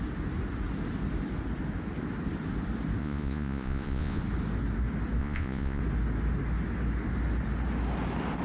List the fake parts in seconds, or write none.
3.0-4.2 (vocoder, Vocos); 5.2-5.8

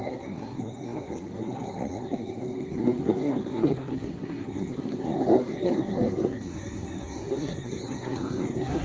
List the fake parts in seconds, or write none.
0.0-8.8 (codec, SNAC)

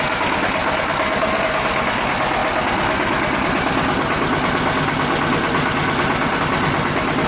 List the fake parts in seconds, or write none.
none